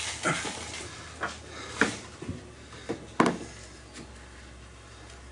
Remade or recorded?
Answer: recorded